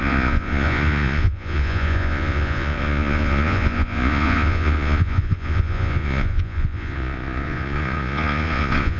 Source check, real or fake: fake